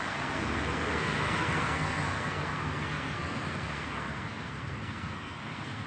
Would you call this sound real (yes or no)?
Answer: no